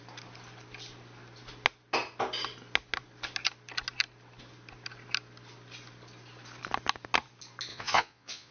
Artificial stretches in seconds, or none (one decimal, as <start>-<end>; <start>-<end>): 7.7-8.5